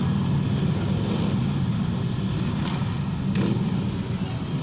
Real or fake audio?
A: real